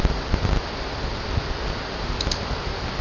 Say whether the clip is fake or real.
real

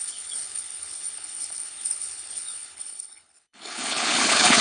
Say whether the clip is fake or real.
fake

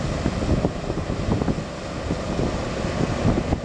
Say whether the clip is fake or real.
real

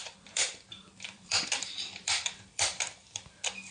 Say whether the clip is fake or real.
fake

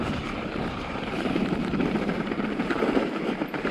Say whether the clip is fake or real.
fake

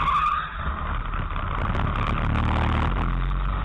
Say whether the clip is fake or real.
real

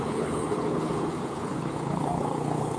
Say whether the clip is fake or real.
fake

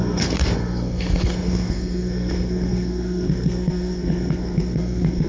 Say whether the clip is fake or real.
fake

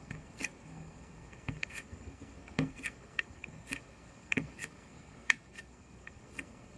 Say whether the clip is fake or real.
fake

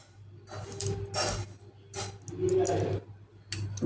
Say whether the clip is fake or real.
real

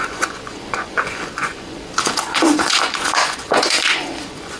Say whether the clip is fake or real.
fake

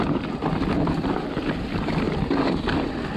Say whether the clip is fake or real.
real